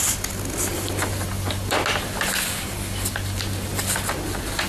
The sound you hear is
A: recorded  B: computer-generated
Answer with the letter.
A